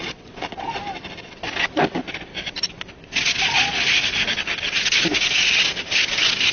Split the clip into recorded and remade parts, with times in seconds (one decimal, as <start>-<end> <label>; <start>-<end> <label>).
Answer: 0.0-0.6 remade; 0.6-3.1 recorded; 3.1-3.9 remade; 3.9-6.5 recorded